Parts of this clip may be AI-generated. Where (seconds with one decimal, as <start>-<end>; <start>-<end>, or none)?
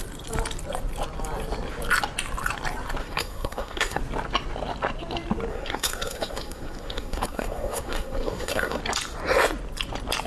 3.0-4.0; 5.5-8.8